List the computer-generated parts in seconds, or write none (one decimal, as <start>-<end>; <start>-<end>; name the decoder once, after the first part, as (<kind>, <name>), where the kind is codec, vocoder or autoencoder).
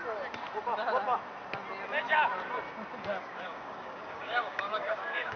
3.2-5.4 (codec, DAC)